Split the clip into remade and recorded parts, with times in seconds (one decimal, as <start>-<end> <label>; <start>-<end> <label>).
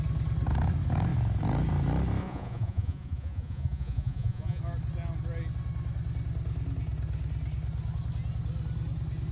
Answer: 0.0-2.2 recorded; 2.2-4.6 remade; 4.6-9.3 recorded